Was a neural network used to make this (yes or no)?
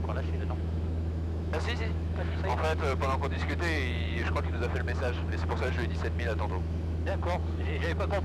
yes